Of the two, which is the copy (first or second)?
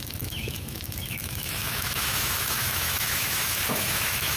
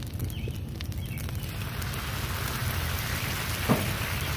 first